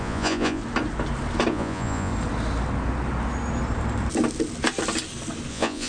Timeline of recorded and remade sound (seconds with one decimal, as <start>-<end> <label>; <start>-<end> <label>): 0.0-0.6 remade; 0.6-1.5 recorded; 1.5-2.1 remade; 2.1-5.5 recorded; 5.5-5.9 remade